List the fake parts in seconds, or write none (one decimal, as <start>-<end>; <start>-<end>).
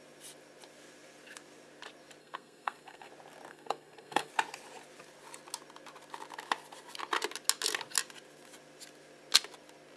2.2-3.1; 3.5-4.3